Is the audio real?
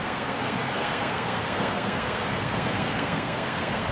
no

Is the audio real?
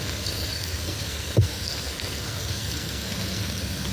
no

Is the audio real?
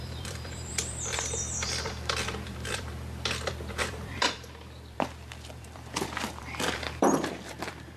no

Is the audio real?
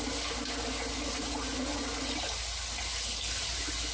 yes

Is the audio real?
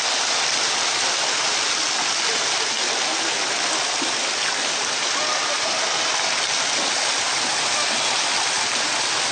yes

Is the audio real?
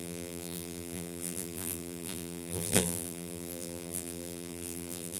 no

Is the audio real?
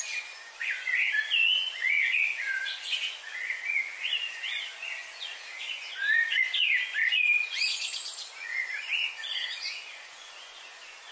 no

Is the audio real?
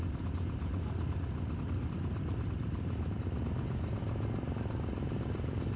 yes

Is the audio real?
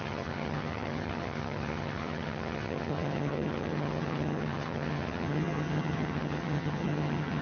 no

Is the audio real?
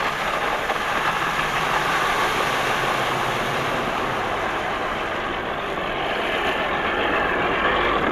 yes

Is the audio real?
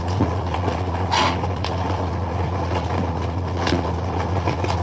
no